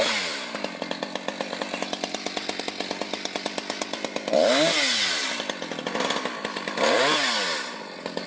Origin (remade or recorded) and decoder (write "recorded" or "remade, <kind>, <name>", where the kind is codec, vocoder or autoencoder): recorded